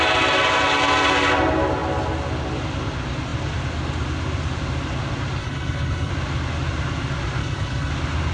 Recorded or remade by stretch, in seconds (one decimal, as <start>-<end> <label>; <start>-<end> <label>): 0.0-5.4 recorded; 5.4-6.1 remade; 6.1-7.4 recorded; 7.4-7.9 remade; 7.9-8.3 recorded